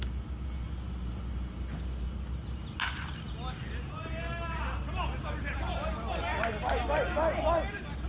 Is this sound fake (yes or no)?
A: no